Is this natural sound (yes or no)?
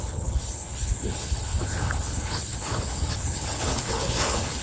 no